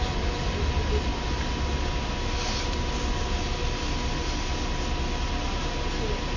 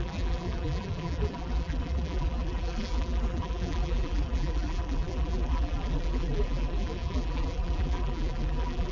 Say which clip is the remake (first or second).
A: second